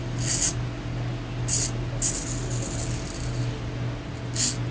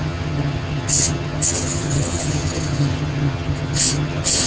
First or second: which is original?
first